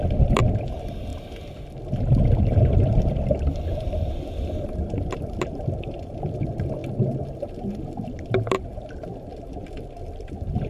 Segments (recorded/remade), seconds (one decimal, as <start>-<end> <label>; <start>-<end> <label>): 0.0-1.1 remade; 1.1-2.4 recorded; 2.4-6.8 remade; 6.8-9.4 recorded; 9.4-10.7 remade